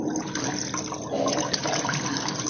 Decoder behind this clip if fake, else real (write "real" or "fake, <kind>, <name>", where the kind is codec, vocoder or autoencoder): real